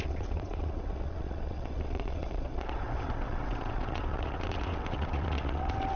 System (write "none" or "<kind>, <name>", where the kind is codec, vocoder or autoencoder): vocoder, WaveNeXt